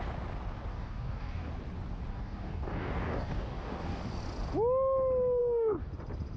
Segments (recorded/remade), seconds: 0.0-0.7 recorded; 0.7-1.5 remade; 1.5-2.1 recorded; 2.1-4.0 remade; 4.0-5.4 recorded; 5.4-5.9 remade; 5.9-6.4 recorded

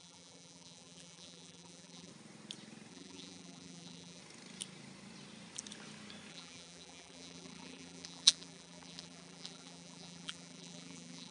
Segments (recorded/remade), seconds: 0.0-2.1 remade; 2.1-2.9 recorded; 2.9-4.2 remade; 4.2-6.3 recorded; 6.3-11.3 remade

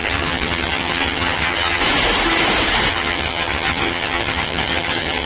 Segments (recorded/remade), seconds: 0.0-1.8 remade; 1.8-2.9 recorded; 2.9-5.3 remade

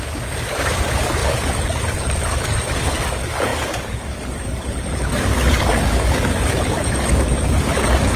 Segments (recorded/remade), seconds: 0.0-8.2 remade

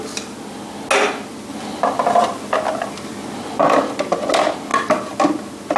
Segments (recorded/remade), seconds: 0.0-5.8 recorded

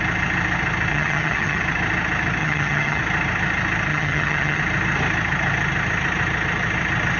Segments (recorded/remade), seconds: 0.0-0.9 recorded; 0.9-1.6 remade; 1.6-2.4 recorded; 2.4-3.0 remade; 3.0-3.9 recorded; 3.9-4.6 remade; 4.6-7.2 recorded

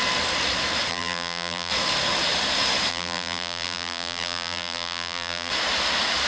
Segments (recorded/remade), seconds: 0.0-0.9 recorded; 0.9-1.7 remade; 1.7-2.9 recorded; 2.9-5.5 remade; 5.5-6.3 recorded